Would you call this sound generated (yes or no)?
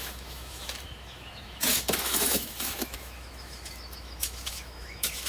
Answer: yes